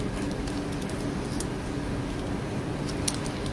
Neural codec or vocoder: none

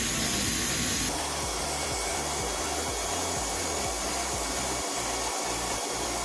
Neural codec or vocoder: none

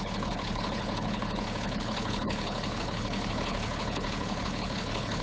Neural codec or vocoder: codec, HILCodec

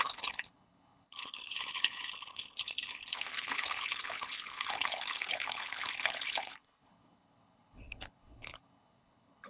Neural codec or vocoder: codec, HILCodec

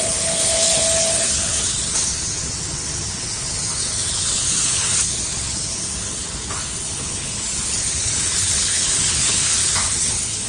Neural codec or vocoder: codec, HILCodec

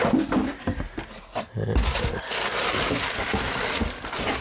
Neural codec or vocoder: none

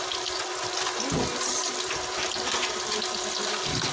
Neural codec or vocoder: none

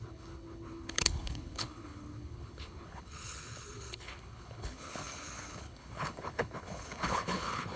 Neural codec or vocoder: codec, HILCodec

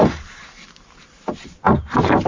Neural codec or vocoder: none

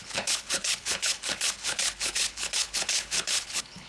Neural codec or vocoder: codec, HILCodec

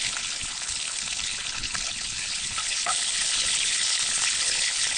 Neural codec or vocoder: codec, HILCodec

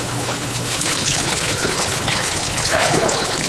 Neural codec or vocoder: codec, HILCodec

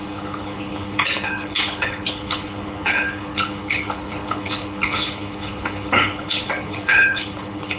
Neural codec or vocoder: codec, HILCodec